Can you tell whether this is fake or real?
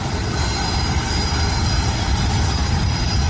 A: real